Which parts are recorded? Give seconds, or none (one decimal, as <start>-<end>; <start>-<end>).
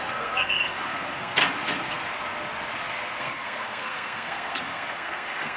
1.4-3.2